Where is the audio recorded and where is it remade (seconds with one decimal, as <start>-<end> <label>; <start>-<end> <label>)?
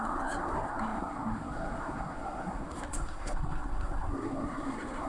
0.0-5.1 remade